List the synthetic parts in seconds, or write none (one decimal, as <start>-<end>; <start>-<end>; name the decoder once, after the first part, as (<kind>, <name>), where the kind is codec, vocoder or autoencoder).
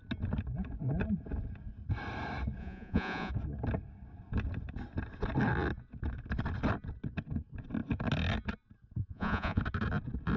2.6-3.3 (vocoder, Vocos); 9.0-9.6